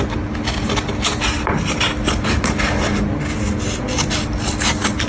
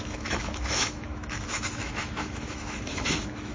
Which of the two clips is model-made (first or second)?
second